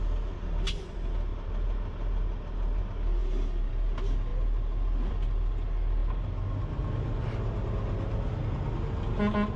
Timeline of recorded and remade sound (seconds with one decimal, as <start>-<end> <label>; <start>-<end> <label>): 0.0-9.6 recorded